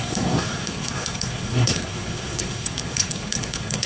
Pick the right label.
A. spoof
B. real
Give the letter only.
A